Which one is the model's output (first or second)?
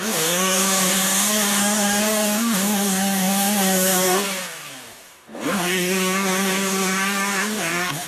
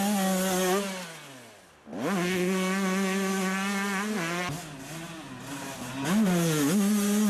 first